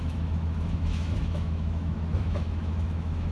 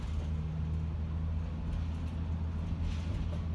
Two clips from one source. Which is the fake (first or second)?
first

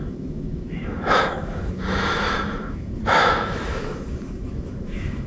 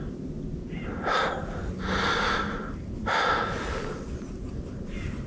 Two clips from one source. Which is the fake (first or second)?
first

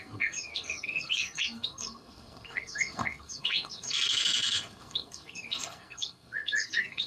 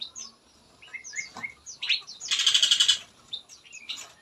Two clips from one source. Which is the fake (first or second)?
first